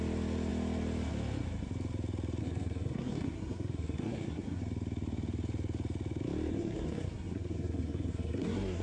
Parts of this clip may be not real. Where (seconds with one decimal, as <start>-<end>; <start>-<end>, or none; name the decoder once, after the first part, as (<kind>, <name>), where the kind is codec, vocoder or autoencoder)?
2.4-4.6 (codec, SNAC); 6.5-8.8